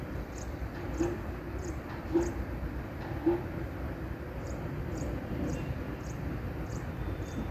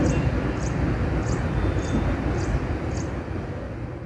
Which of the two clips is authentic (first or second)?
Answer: second